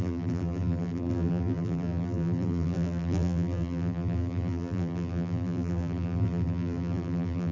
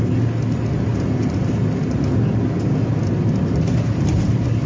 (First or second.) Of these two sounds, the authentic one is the second